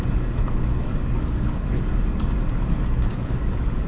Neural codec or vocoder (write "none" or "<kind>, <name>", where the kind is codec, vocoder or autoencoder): codec, DAC